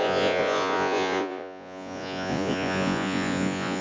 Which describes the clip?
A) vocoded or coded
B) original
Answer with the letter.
A